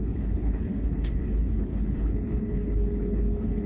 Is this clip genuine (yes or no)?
no